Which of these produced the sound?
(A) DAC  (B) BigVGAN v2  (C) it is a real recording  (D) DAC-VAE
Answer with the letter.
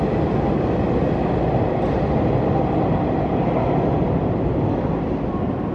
C